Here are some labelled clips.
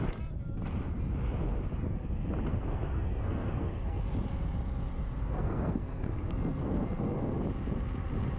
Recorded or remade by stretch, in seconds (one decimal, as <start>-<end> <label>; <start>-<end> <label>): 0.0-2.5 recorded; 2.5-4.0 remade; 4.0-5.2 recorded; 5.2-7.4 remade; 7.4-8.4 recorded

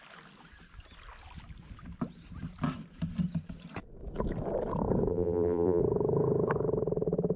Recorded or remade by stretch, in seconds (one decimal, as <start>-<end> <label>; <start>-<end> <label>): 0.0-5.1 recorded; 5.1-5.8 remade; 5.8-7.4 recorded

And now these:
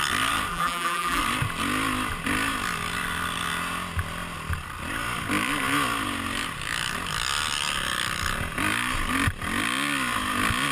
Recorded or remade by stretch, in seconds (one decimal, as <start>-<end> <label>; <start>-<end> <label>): 0.0-0.5 recorded; 0.5-1.2 remade; 1.2-10.7 recorded

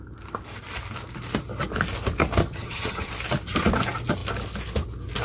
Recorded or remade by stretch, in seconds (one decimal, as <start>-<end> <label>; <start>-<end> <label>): 0.0-2.4 recorded; 2.4-3.1 remade; 3.1-5.2 recorded

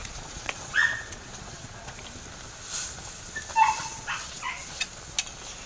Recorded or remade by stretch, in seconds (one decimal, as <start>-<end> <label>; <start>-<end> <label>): 0.0-2.0 remade; 2.0-3.8 recorded; 3.8-4.9 remade; 4.9-5.7 recorded